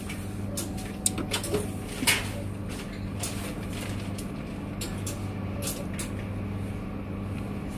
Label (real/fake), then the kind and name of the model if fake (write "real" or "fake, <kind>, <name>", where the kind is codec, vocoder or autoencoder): real